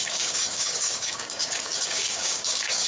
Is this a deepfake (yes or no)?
yes